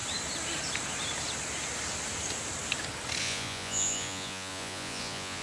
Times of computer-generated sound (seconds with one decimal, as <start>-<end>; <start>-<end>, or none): 3.2-5.4